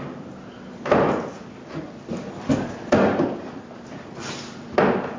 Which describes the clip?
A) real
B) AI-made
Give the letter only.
A